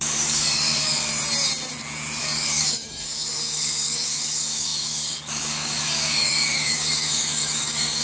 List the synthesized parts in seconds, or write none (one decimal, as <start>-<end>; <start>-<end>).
0.0-1.1; 2.2-8.0